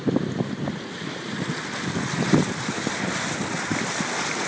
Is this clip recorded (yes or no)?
yes